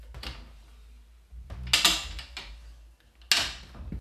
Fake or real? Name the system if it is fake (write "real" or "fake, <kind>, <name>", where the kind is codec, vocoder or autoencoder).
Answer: real